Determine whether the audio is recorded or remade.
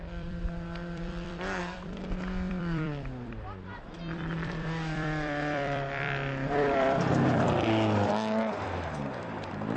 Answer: remade